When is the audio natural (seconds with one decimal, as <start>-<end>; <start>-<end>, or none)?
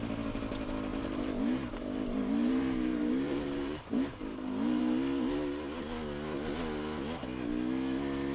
0.0-0.9; 4.8-8.3